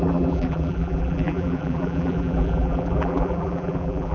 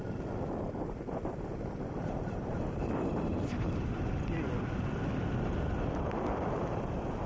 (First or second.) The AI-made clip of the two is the first